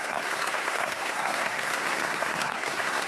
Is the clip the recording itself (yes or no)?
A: no